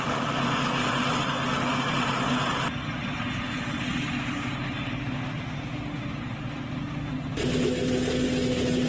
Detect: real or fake real